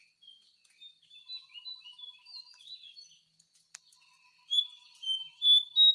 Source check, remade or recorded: recorded